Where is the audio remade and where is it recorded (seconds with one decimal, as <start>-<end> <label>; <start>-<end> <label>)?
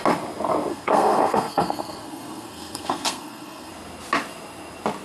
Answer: 0.0-0.7 recorded; 0.7-3.7 remade; 3.7-5.0 recorded